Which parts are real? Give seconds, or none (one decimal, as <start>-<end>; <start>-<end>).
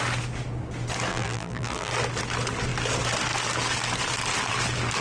0.0-1.1; 1.9-5.0